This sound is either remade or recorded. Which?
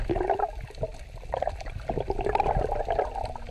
recorded